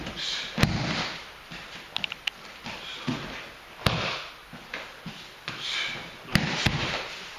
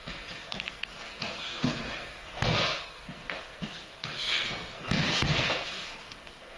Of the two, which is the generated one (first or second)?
second